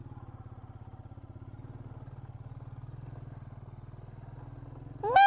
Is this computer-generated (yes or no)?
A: no